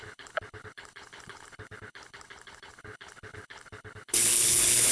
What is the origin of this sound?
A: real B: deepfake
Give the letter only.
B